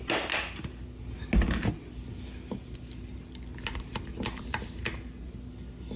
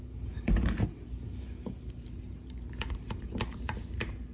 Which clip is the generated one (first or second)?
second